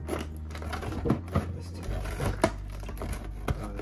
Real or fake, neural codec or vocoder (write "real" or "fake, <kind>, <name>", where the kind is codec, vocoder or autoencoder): real